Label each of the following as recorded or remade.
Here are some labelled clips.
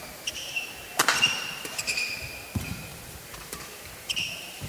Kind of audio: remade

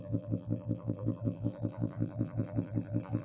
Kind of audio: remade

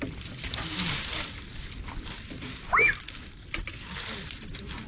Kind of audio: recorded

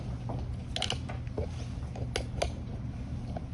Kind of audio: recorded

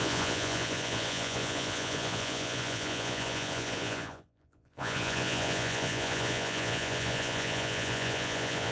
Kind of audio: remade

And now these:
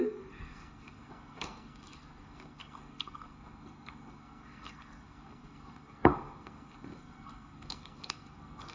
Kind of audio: remade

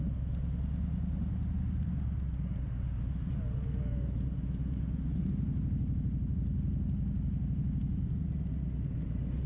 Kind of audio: recorded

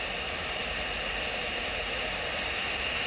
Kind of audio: recorded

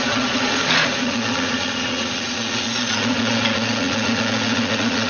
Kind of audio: remade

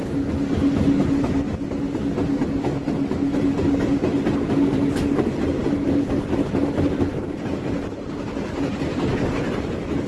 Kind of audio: recorded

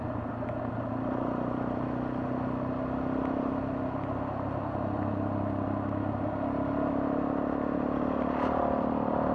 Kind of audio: recorded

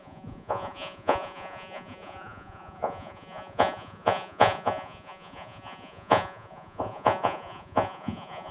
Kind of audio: remade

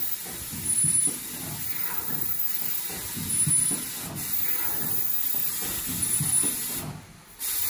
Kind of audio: remade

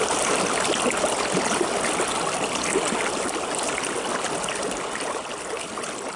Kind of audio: recorded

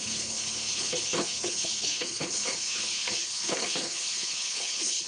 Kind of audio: remade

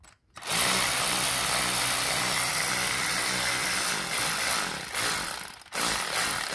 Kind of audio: recorded